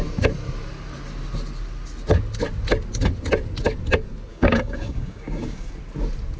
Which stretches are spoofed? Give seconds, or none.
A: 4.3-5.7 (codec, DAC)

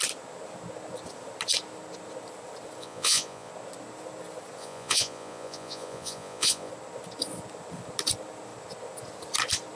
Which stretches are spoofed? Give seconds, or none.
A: 2.8-3.5 (vocoder, Vocos); 4.6-6.7

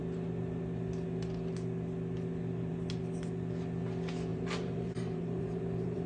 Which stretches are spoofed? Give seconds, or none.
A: 4.3-6.1 (vocoder, BigVGAN v2)

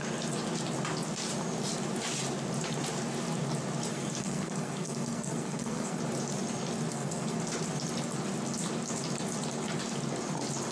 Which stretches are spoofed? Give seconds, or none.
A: 3.9-6.0 (codec, SNAC); 6.9-7.4

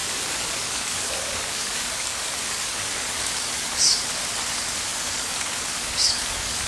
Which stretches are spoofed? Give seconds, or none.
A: 0.0-4.0 (codec, DAC); 4.9-6.7

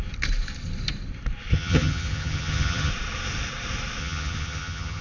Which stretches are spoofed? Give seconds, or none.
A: 1.5-2.9 (vocoder, HiFi-GAN); 4.0-5.0

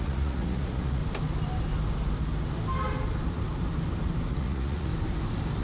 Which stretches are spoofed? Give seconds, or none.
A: 0.0-1.0 (vocoder, Vocos); 4.3-4.9

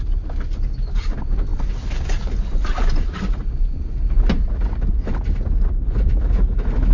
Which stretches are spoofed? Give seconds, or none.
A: none